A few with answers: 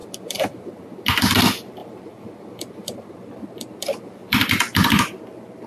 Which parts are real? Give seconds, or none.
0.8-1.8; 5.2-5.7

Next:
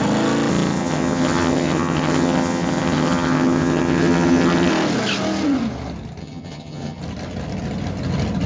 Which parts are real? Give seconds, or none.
0.0-0.5; 4.7-6.2; 7.0-8.5

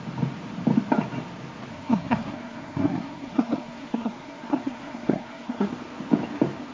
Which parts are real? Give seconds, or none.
0.0-1.7; 5.7-6.7